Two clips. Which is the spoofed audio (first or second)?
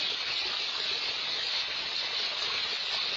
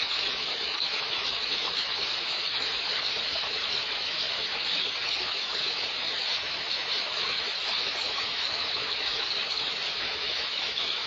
second